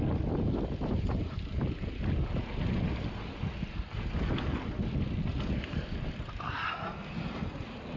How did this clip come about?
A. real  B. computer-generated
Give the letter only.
A